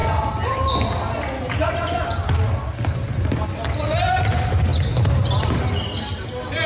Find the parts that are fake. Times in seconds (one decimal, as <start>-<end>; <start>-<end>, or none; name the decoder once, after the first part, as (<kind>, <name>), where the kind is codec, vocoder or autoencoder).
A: none